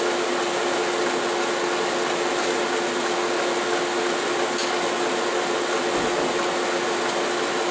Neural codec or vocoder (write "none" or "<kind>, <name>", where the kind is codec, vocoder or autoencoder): none